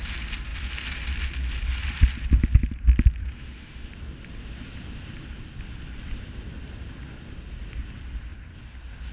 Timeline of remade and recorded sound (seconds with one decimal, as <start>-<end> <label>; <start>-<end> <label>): 0.0-3.2 recorded; 3.2-3.9 remade; 3.9-9.1 recorded